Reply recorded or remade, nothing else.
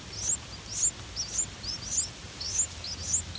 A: recorded